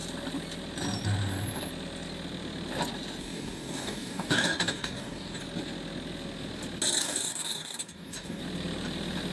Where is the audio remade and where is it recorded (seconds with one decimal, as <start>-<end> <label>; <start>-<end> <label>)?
0.0-3.2 recorded; 3.2-5.4 remade; 5.4-7.0 recorded; 7.0-8.4 remade; 8.4-9.3 recorded